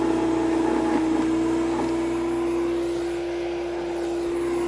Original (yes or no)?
yes